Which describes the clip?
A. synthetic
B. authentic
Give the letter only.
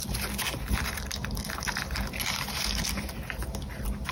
B